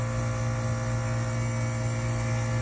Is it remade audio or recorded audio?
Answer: recorded